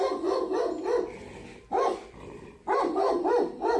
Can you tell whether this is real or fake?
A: real